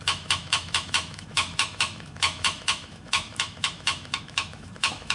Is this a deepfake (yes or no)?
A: yes